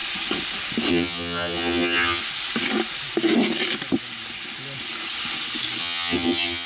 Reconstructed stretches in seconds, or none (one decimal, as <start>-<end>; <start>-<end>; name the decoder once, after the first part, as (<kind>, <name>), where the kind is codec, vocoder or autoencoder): 0.9-2.2 (vocoder, HiFi-GAN); 5.8-6.7